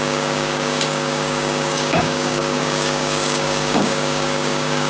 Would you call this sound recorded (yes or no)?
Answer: no